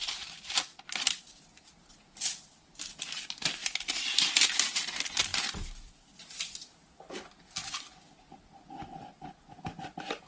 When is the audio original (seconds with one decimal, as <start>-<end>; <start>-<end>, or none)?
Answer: 0.0-3.6; 4.3-10.3